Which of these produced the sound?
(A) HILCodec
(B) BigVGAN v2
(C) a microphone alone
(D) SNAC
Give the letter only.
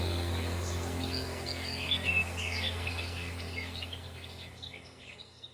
D